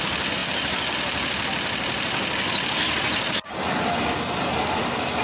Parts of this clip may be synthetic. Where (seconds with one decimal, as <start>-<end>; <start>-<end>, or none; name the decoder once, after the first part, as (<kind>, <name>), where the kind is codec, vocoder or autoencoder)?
none